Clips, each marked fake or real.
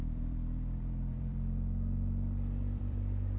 fake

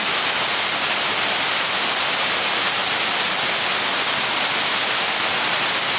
real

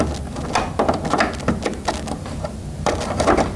real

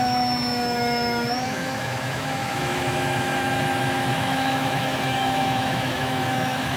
fake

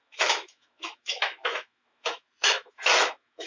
fake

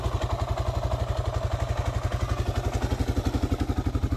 real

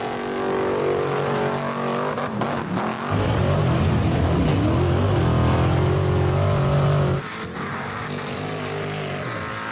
real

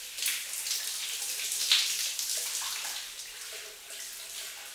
real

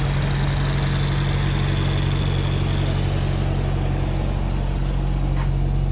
real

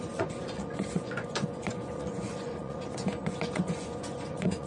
fake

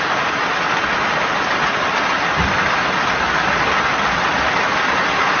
real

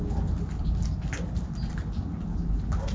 real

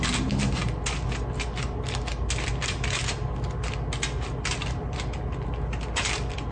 real